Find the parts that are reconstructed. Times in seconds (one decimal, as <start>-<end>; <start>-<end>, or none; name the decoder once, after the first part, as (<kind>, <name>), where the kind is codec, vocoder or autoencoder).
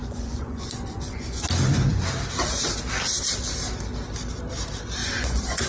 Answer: 0.0-1.4 (vocoder, Vocos); 5.0-5.7